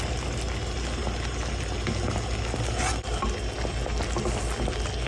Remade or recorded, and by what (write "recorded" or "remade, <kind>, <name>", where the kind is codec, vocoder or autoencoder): recorded